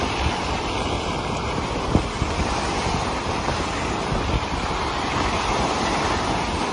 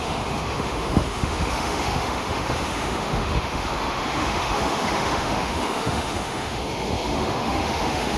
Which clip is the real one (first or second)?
first